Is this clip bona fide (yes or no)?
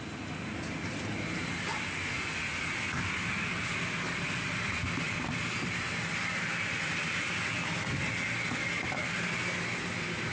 yes